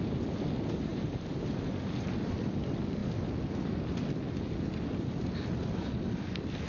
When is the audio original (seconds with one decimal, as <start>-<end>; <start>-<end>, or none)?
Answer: 0.0-0.9; 1.7-6.7